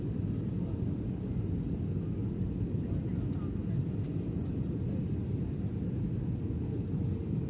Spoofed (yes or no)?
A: no